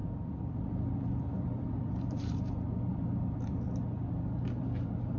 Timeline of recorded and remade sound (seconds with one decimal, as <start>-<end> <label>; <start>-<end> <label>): 0.0-5.2 remade